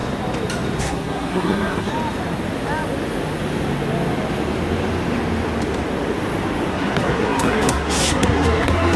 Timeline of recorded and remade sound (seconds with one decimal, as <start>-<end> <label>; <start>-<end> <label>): 0.0-0.8 recorded; 0.8-1.9 remade; 1.9-6.7 recorded; 6.7-9.0 remade